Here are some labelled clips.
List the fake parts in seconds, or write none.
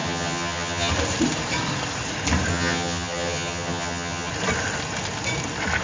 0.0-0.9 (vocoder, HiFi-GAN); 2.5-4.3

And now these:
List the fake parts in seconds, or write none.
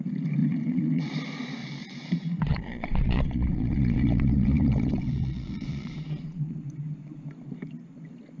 0.4-1.1 (vocoder, Vocos); 1.6-6.6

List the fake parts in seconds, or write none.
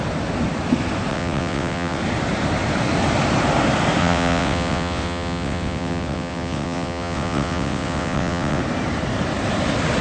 1.1-2.0 (vocoder, WaveNeXt); 4.0-8.6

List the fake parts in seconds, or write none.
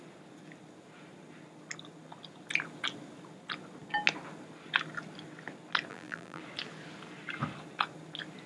5.9-6.4 (vocoder, BigVGAN v2)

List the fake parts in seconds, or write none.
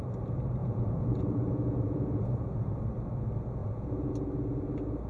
0.6-2.8 (vocoder, Vocos); 3.6-4.1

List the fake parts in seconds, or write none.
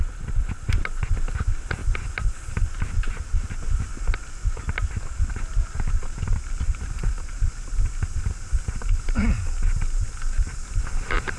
none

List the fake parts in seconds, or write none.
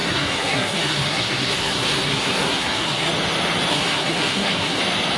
0.0-3.1 (codec, SNAC); 3.7-4.8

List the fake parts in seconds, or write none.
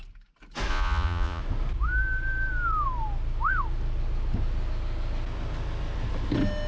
0.7-1.4 (vocoder, Vocos)